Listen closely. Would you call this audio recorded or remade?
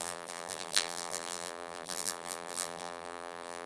remade